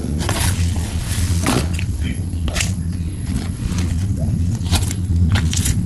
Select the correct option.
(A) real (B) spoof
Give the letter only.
B